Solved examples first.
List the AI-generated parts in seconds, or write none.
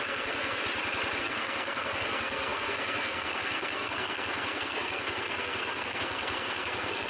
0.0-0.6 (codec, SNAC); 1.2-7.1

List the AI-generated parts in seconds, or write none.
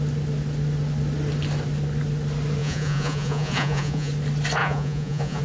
2.6-4.1 (vocoder, Vocos); 4.6-5.4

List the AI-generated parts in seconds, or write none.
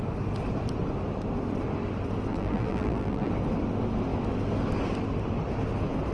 2.3-3.3 (vocoder, BigVGAN v2)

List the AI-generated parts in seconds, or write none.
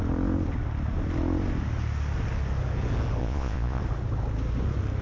3.2-3.8 (vocoder, Vocos)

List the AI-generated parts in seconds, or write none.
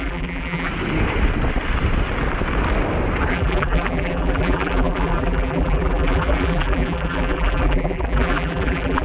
0.0-0.7 (vocoder, BigVGAN v2); 3.3-9.0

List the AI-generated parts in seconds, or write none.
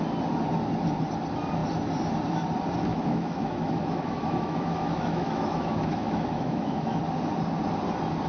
2.9-7.0 (autoencoder, DAC-VAE)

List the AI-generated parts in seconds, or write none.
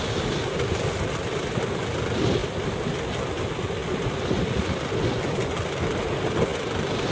none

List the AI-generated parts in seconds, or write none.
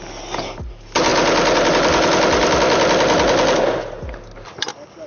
none